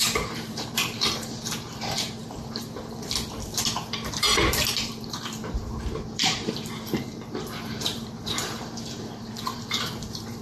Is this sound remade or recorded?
remade